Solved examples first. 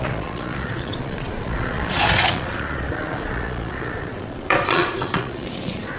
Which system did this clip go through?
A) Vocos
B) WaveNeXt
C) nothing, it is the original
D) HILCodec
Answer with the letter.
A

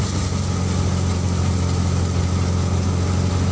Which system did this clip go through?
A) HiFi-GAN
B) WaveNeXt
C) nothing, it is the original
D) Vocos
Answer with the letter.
C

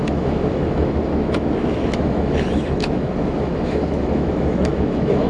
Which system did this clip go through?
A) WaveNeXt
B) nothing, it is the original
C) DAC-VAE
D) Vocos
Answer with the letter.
C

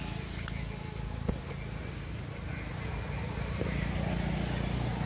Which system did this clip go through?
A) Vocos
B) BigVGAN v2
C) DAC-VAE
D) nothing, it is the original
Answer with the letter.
D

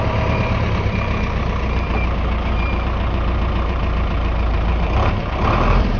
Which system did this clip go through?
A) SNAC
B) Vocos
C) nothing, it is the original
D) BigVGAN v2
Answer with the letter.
D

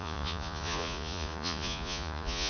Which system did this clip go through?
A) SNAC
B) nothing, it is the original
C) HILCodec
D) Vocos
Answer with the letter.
D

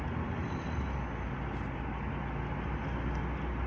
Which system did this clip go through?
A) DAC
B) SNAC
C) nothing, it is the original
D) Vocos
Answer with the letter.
C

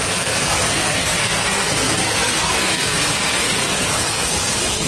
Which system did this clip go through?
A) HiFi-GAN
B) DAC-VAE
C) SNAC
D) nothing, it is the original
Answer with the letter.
C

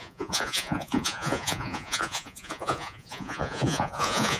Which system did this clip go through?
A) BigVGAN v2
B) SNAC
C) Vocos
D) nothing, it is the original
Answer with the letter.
C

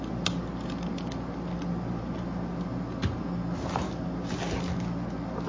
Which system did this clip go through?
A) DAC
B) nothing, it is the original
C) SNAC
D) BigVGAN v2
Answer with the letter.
B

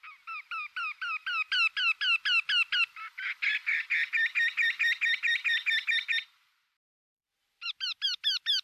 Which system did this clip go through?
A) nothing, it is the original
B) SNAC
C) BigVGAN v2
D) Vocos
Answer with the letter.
A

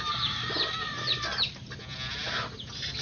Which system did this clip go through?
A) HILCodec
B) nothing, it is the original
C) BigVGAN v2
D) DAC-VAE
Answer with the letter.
B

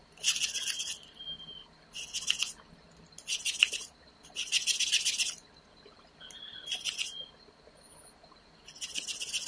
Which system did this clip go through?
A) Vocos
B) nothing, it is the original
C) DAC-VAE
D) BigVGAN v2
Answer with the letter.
B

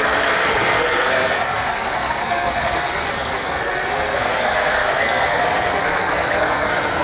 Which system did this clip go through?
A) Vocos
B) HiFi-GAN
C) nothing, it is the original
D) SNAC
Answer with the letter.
D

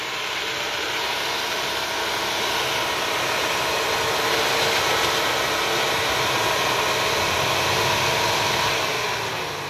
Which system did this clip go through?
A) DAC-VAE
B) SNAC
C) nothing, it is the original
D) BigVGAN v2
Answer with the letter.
C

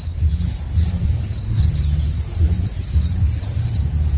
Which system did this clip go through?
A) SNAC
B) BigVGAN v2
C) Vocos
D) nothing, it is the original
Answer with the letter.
B